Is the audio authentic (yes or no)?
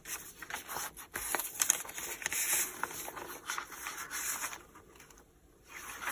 yes